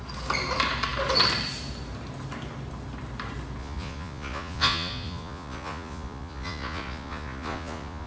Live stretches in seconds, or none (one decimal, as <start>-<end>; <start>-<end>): 0.0-3.6